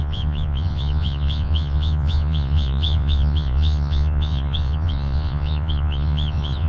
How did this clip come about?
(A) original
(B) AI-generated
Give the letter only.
B